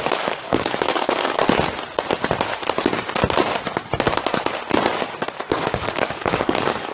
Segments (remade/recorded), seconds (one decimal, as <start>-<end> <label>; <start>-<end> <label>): 0.0-1.4 remade; 1.4-5.5 recorded; 5.5-6.9 remade